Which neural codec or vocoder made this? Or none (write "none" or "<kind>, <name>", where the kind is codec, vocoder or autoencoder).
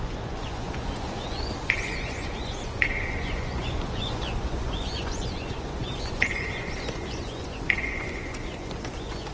vocoder, Vocos